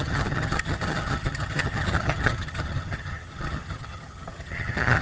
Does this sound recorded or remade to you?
remade